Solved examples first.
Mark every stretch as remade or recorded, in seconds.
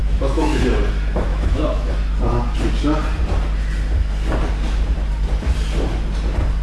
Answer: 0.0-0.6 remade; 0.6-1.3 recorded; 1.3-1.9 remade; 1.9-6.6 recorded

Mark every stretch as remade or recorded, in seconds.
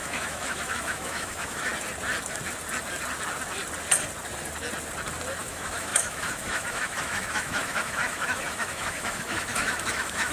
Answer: 0.0-1.7 remade; 1.7-5.4 recorded; 5.4-10.3 remade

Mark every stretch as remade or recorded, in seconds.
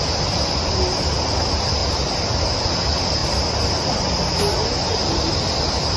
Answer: 0.0-6.0 recorded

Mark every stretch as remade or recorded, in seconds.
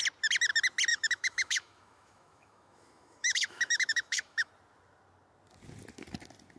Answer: 0.0-0.9 recorded; 0.9-4.5 remade; 4.5-6.6 recorded